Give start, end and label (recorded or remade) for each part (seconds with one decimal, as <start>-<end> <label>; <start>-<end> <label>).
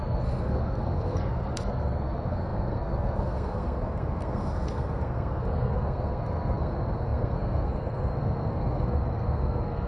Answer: 0.0-9.9 remade